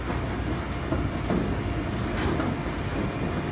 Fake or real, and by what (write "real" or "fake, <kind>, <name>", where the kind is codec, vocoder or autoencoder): real